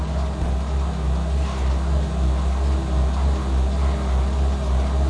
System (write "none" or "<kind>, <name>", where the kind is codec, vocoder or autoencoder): none